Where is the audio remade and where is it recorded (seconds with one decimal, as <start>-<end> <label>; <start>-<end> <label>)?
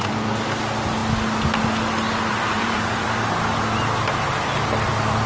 0.0-2.3 recorded; 2.3-4.3 remade; 4.3-5.3 recorded